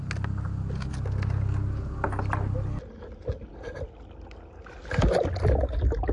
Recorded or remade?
recorded